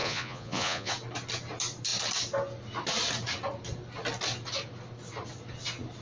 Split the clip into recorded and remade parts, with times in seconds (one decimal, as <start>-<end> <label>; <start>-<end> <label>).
0.0-0.9 remade; 0.9-6.0 recorded